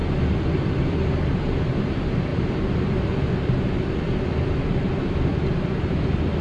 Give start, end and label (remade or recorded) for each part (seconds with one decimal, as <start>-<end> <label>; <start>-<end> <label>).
0.0-5.3 remade; 5.3-5.9 recorded; 5.9-6.4 remade